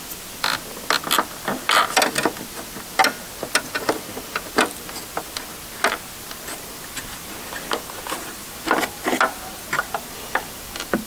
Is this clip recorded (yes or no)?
yes